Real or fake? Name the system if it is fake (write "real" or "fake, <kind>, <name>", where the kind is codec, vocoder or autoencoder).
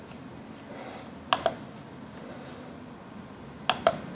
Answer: real